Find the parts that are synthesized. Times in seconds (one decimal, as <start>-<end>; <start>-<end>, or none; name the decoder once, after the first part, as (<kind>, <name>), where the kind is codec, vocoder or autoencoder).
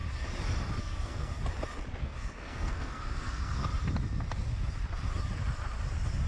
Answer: 0.8-1.3 (codec, SNAC); 2.0-3.7